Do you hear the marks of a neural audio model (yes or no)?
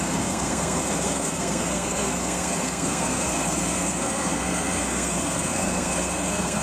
yes